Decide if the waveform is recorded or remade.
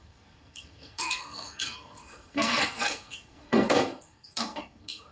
remade